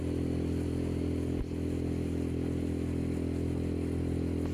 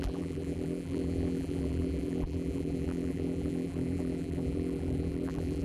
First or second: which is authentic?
first